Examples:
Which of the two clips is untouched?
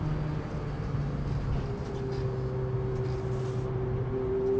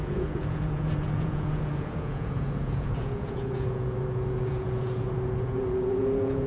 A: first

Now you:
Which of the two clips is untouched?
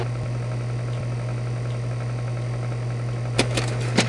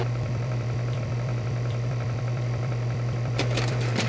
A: first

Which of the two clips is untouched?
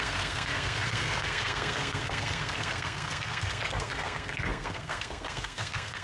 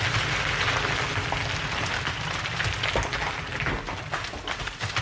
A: second